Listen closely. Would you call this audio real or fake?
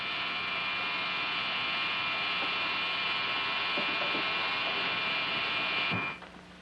real